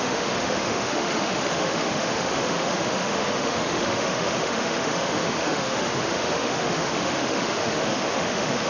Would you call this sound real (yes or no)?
no